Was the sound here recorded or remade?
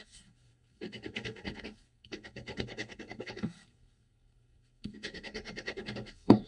remade